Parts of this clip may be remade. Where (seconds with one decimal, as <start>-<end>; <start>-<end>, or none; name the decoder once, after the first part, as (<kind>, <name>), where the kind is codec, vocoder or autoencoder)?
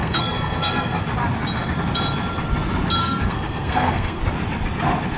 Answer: 0.0-1.0 (codec, SNAC); 3.0-4.2